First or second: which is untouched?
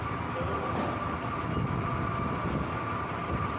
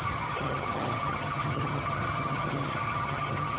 first